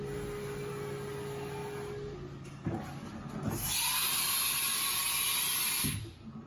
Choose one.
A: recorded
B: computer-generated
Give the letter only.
A